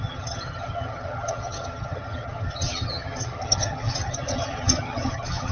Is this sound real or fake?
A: fake